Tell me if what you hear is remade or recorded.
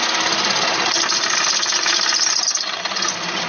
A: recorded